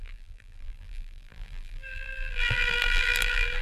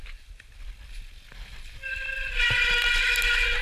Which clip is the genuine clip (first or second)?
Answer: second